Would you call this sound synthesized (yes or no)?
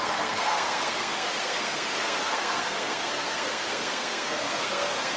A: yes